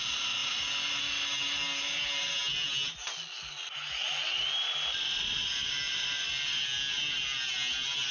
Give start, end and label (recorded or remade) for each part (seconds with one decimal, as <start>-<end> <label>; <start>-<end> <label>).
0.0-8.1 recorded